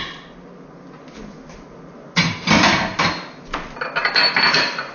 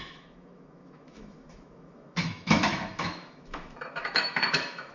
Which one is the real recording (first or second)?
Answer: first